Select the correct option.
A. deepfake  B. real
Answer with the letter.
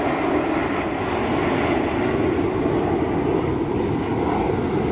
B